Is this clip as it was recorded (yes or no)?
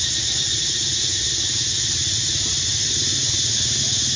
yes